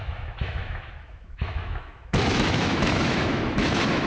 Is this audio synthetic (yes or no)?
yes